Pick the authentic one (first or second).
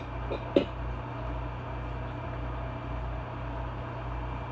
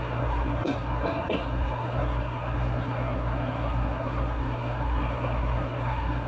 first